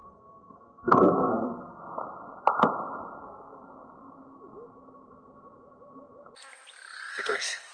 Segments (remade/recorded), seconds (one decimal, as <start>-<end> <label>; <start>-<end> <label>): 0.0-1.8 remade; 1.8-3.2 recorded; 3.2-3.7 remade; 3.7-7.1 recorded; 7.1-7.7 remade